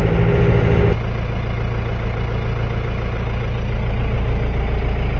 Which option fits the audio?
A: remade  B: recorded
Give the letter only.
B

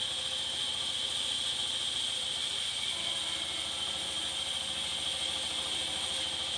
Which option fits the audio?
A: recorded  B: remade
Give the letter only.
A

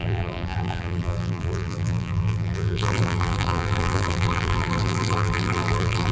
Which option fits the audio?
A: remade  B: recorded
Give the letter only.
A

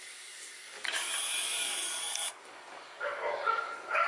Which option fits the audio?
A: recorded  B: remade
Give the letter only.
B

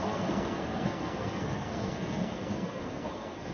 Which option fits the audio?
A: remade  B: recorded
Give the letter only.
A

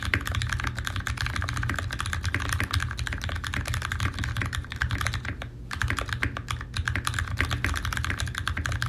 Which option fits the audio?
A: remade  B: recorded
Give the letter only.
B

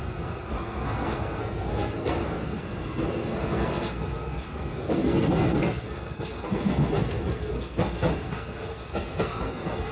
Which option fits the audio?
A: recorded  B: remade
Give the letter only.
B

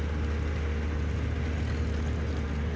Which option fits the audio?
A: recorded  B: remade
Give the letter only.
A